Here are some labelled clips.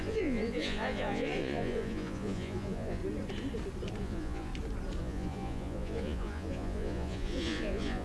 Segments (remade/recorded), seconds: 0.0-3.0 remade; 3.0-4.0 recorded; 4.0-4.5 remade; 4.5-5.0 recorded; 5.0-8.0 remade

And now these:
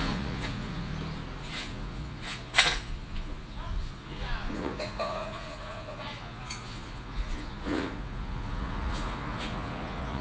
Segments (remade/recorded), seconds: 0.0-0.9 remade; 0.9-1.4 recorded; 1.4-10.2 remade